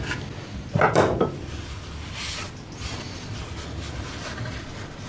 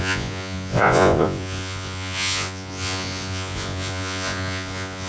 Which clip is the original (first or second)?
first